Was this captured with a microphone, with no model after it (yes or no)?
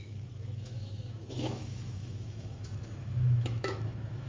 no